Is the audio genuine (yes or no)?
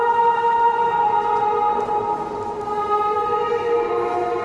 yes